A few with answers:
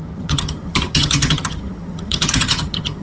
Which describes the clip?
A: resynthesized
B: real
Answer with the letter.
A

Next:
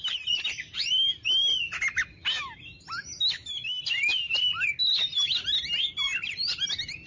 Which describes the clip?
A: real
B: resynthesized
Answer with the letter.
A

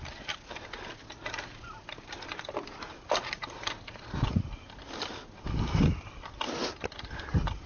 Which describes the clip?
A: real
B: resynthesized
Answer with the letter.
A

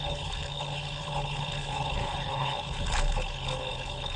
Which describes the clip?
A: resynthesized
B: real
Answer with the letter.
A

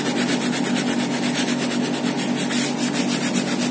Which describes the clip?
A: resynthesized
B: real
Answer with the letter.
B